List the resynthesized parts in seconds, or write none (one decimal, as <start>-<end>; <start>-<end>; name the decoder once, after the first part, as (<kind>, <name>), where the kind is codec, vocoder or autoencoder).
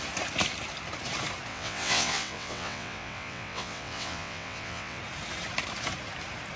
1.5-5.0 (vocoder, WaveNeXt)